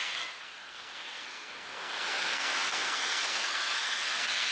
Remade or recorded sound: remade